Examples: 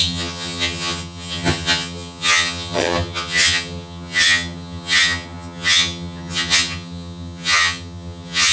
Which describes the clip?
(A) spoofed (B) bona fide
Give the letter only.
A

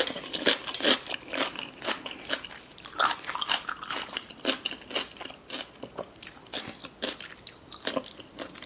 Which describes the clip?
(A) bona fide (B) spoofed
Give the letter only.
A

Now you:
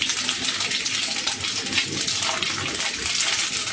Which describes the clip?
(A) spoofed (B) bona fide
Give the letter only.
B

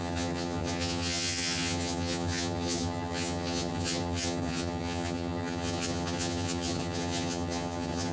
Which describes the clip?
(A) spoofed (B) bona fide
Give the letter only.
A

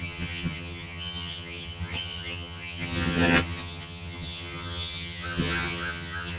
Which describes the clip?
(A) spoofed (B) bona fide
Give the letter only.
A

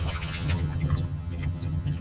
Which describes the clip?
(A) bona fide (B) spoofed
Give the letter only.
B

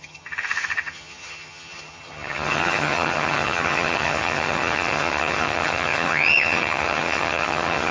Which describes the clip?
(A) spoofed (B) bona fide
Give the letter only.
A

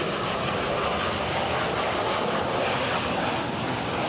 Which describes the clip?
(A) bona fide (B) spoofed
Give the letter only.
A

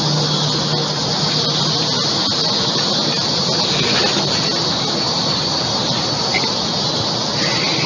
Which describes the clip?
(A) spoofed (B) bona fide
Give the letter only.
B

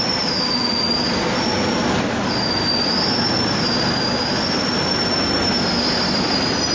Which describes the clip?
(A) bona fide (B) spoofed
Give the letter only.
A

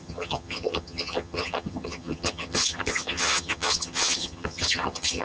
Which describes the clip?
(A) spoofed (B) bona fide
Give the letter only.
A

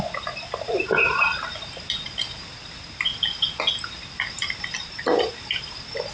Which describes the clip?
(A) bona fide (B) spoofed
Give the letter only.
A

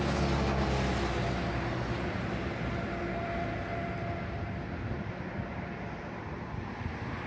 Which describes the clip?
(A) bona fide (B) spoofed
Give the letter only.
A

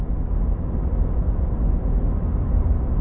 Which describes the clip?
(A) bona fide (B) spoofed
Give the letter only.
A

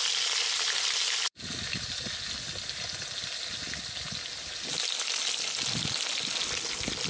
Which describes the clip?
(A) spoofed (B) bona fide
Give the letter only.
B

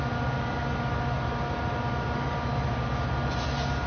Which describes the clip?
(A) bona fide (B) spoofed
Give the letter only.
A